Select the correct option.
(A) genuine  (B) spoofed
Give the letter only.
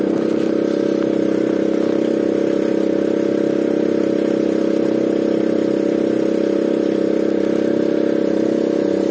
A